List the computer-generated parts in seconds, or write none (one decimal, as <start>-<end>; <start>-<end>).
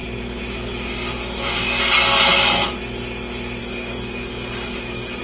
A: 3.6-5.2